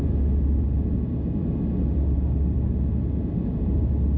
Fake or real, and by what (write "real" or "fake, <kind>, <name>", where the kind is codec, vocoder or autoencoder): real